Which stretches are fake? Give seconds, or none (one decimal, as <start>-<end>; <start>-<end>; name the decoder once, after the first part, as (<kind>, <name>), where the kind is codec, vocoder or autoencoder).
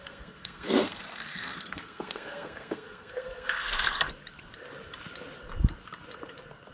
0.0-4.0 (codec, SNAC)